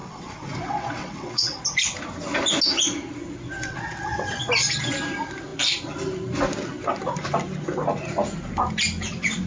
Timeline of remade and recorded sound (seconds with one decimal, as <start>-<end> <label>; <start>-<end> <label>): 0.0-1.6 remade; 1.6-3.6 recorded; 3.6-4.5 remade; 4.5-9.5 recorded

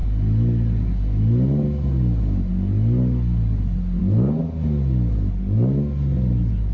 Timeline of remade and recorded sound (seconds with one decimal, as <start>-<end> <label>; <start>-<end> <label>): 0.0-6.7 recorded

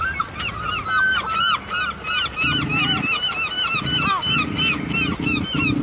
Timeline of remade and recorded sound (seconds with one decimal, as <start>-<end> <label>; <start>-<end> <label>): 0.0-5.8 recorded

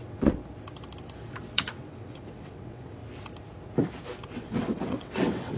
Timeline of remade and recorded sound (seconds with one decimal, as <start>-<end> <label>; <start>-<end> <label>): 0.0-0.4 remade; 0.4-1.5 recorded; 1.5-3.0 remade; 3.0-4.3 recorded; 4.3-5.6 remade

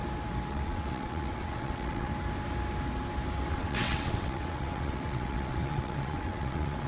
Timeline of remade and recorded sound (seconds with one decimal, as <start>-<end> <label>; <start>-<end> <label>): 0.0-0.5 recorded; 0.5-2.1 remade; 2.1-3.5 recorded; 3.5-6.9 remade